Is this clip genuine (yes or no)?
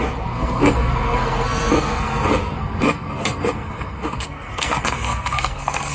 no